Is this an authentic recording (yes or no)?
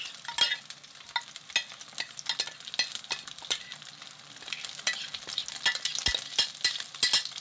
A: yes